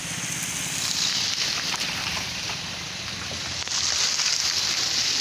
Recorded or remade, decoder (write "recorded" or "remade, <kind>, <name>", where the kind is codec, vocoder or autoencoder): recorded